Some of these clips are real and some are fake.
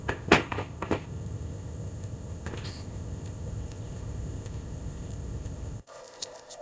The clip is fake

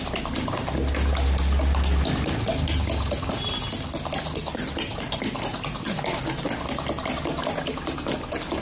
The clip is real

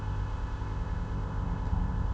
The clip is fake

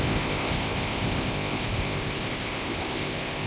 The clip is fake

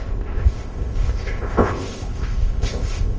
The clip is fake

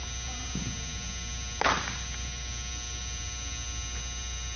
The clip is real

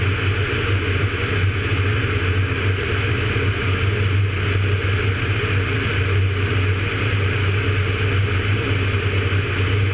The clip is real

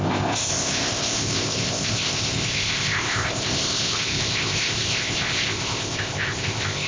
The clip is fake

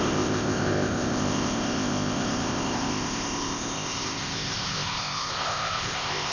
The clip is fake